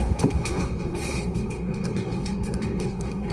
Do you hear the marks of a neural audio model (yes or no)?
yes